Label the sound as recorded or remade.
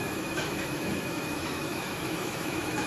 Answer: remade